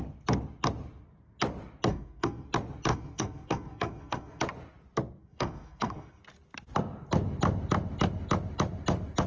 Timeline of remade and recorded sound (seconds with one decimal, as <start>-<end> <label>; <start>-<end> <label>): 0.0-1.9 recorded; 1.9-2.5 remade; 2.5-2.9 recorded; 2.9-4.4 remade; 4.4-5.2 recorded; 5.2-6.2 remade; 6.2-9.3 recorded